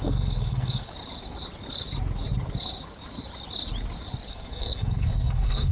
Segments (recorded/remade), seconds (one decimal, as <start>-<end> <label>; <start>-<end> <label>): 0.0-0.9 remade; 0.9-4.3 recorded; 4.3-5.7 remade